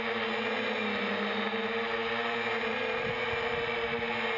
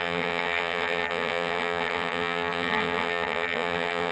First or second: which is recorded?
first